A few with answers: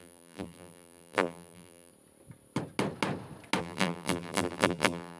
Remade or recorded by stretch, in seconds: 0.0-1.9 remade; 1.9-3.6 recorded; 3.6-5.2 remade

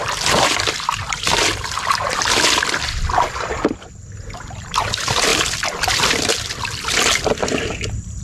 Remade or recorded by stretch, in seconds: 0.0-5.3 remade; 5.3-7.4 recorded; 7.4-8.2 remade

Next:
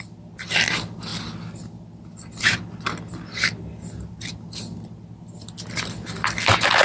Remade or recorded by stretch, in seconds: 0.0-6.8 recorded

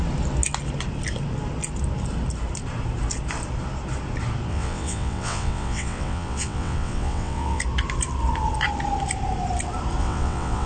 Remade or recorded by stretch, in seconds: 0.0-4.5 recorded; 4.5-7.6 remade; 7.6-10.0 recorded; 10.0-10.7 remade

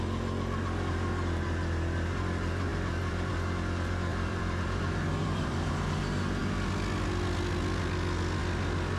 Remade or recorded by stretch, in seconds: 0.0-2.7 recorded; 2.7-3.3 remade; 3.3-4.1 recorded; 4.1-5.7 remade; 5.7-9.0 recorded

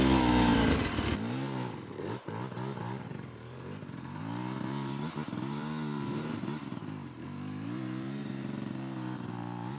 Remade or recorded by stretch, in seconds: 0.0-0.5 remade; 0.5-1.2 recorded; 1.2-9.8 remade

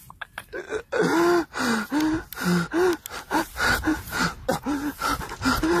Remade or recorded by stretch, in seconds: 0.0-5.8 recorded